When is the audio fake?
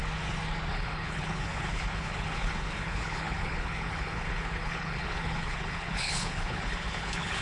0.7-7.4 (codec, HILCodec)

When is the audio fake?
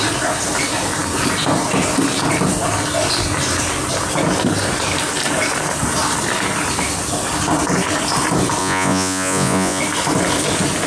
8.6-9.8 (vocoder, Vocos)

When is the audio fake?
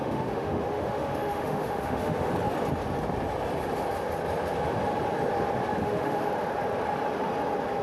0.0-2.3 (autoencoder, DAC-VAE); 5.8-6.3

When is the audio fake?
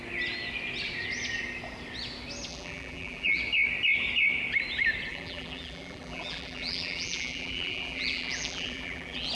2.5-3.4 (vocoder, BigVGAN v2); 5.1-9.3